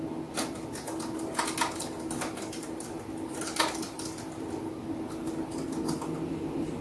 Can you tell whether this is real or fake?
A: real